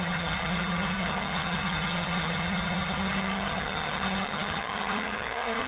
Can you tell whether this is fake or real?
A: fake